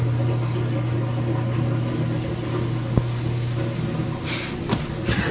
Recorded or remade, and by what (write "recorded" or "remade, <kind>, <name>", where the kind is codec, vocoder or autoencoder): recorded